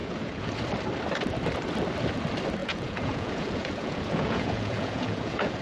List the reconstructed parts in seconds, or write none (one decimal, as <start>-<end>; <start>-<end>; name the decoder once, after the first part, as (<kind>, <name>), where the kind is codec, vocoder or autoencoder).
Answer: 0.0-0.5 (vocoder, Vocos); 2.6-5.6